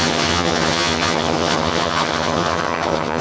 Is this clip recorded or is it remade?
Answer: remade